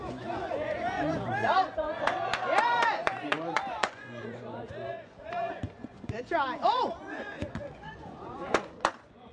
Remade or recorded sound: remade